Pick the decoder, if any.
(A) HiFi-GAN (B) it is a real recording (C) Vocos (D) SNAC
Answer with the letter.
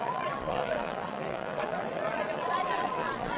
C